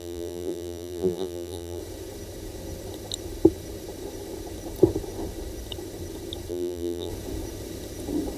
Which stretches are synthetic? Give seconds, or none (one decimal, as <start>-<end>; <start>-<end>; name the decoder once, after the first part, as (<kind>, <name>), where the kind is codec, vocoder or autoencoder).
0.0-1.8 (vocoder, BigVGAN v2); 6.5-7.1